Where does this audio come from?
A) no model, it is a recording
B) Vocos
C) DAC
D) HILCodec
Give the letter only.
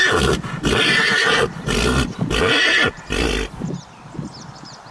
A